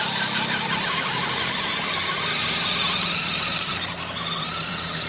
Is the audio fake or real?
fake